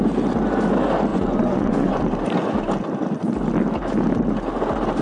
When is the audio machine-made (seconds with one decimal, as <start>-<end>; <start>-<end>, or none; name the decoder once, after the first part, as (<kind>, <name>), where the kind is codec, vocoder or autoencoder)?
1.1-2.0 (vocoder, Vocos)